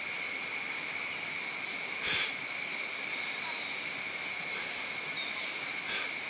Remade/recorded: recorded